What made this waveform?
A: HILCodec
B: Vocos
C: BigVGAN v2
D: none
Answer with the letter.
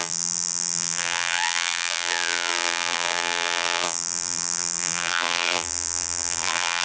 C